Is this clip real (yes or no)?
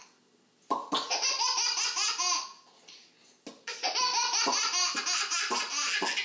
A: yes